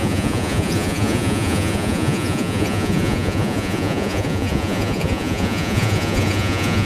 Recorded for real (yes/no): no